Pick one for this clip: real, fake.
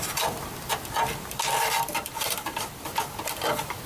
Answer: fake